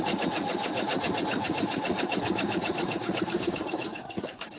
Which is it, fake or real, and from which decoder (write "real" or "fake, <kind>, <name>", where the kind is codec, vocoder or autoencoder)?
fake, vocoder, Vocos